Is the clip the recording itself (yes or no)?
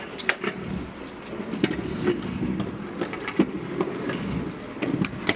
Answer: yes